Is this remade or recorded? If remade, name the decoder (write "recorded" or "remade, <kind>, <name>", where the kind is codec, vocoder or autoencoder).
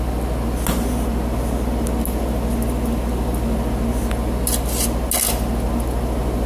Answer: recorded